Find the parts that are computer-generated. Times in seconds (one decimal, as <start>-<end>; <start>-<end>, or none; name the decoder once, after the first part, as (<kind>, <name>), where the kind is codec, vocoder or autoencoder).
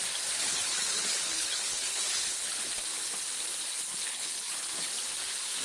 0.4-2.7 (codec, HILCodec); 3.9-4.9